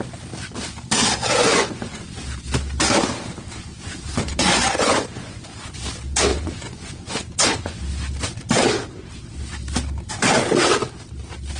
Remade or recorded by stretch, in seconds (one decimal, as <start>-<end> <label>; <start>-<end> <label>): 0.0-1.4 recorded; 1.4-2.2 remade; 2.2-3.7 recorded; 3.7-5.8 remade; 5.8-6.3 recorded; 6.3-7.8 remade; 7.8-11.6 recorded